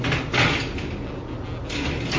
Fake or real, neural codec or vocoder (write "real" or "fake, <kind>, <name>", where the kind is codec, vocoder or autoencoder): real